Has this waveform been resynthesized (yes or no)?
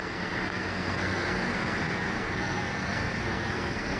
yes